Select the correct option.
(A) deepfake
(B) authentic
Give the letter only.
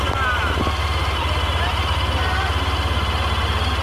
B